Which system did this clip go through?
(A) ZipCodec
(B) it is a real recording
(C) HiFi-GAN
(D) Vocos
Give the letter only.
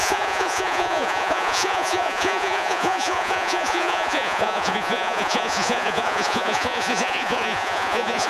D